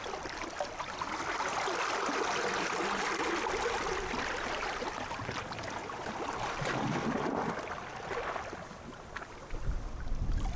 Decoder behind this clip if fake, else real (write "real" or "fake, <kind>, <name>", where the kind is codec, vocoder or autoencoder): real